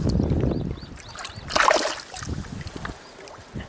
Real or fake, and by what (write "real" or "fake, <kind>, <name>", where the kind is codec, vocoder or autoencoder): real